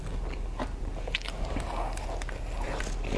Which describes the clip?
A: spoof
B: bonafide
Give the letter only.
B